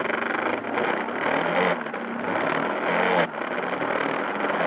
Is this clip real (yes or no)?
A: yes